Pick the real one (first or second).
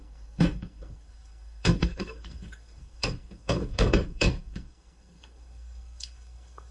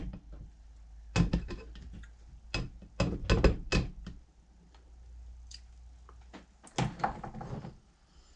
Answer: second